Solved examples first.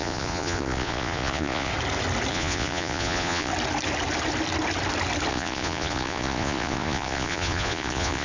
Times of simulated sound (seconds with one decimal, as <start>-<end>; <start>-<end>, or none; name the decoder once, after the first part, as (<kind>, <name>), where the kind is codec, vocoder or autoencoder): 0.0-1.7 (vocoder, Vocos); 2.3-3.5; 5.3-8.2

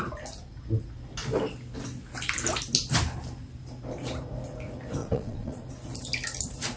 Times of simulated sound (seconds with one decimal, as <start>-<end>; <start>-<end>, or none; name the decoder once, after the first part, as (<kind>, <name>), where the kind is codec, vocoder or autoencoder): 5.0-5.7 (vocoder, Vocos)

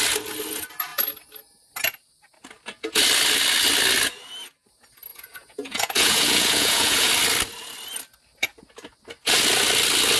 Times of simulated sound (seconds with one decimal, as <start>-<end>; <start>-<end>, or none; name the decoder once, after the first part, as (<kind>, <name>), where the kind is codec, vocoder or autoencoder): 5.1-7.1 (vocoder, Vocos)